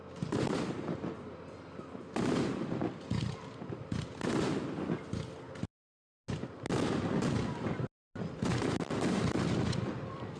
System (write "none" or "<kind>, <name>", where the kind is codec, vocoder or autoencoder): none